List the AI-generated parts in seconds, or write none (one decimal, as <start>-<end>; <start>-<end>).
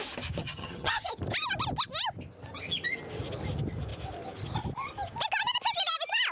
0.4-1.1